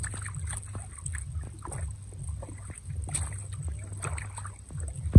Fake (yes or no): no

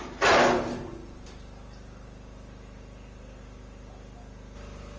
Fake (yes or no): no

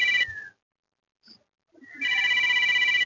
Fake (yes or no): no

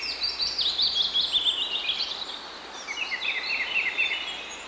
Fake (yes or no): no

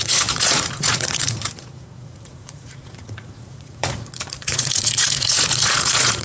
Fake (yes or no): yes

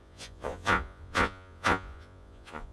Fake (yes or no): yes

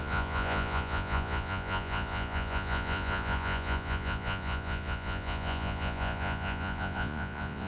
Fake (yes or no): yes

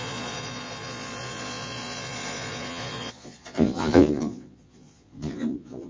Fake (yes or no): yes